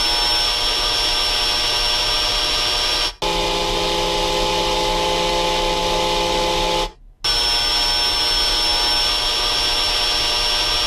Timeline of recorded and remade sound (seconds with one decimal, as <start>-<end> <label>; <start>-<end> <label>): 0.0-10.9 recorded